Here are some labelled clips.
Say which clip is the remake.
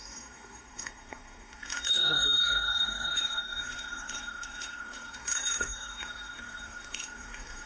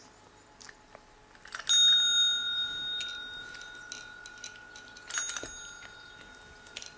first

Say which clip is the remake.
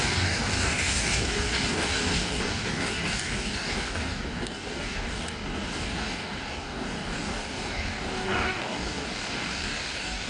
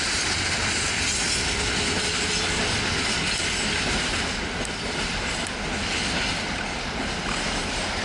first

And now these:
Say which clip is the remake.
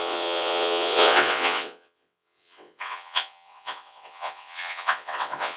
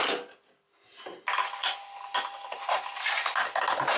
first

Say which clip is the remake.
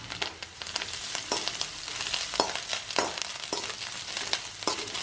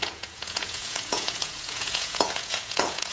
second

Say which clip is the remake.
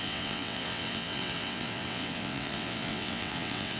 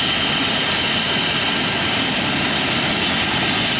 first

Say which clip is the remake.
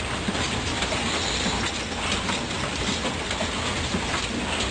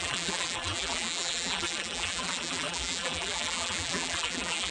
second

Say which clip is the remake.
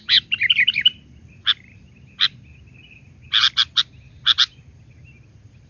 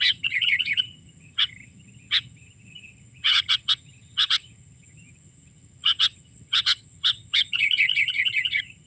second